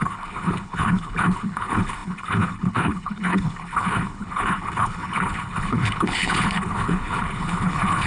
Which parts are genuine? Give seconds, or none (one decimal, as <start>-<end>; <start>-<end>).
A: none

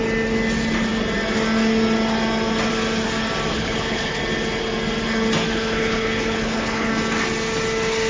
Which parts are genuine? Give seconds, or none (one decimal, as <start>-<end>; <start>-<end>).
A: 0.0-3.5; 4.2-5.5; 6.9-8.1